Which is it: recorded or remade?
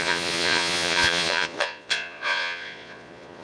remade